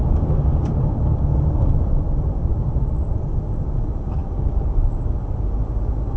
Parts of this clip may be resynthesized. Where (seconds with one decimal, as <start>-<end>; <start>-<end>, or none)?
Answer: 0.0-1.3; 2.0-2.5; 3.6-4.2; 4.9-6.2